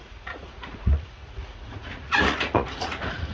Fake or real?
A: fake